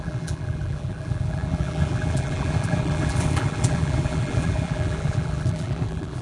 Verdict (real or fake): fake